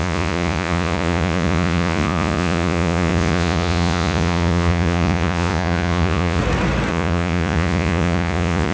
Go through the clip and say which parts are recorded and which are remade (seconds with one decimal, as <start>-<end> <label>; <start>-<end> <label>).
0.0-6.4 remade; 6.4-6.9 recorded; 6.9-8.7 remade